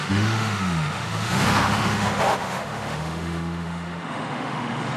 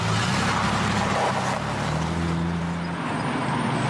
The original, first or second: second